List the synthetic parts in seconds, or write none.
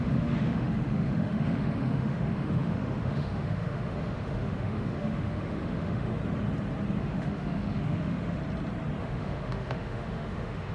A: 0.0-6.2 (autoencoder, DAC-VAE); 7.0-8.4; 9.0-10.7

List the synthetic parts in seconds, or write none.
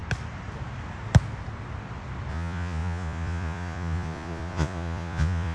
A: 2.3-5.5 (vocoder, Vocos)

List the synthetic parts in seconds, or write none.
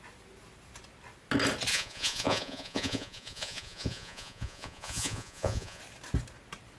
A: 1.7-5.8 (vocoder, Vocos)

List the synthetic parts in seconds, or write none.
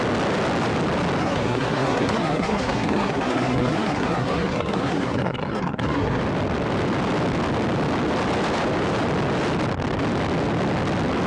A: 1.2-6.2 (codec, SNAC)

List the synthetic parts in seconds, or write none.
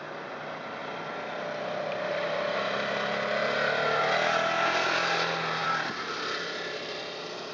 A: 0.8-2.6 (vocoder, BigVGAN v2); 5.6-7.0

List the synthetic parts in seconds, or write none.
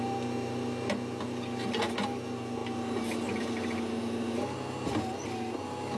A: none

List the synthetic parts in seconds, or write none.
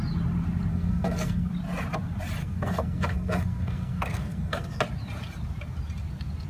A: 0.7-1.5 (codec, SNAC); 2.4-4.8